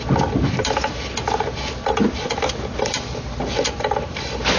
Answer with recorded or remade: recorded